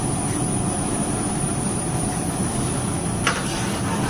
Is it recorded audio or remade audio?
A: recorded